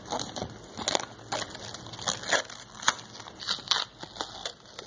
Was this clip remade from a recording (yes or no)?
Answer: no